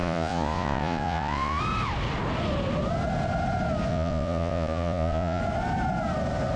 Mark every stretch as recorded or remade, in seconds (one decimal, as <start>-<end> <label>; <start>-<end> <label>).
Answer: 0.0-1.6 remade; 1.6-3.9 recorded; 3.9-5.4 remade; 5.4-6.6 recorded